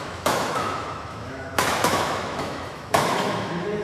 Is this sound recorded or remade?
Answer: remade